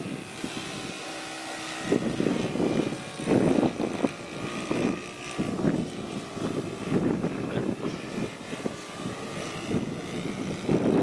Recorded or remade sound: recorded